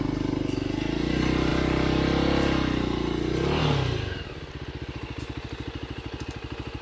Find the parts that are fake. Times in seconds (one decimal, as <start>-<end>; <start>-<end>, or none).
none